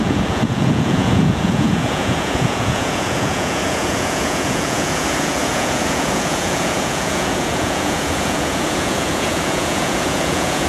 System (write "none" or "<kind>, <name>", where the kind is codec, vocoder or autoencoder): vocoder, Vocos